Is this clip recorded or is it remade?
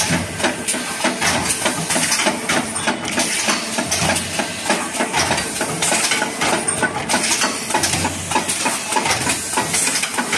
recorded